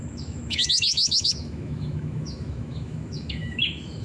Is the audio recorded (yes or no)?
no